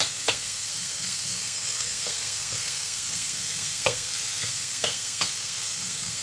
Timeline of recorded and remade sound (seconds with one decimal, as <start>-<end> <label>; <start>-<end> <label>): 0.0-6.2 remade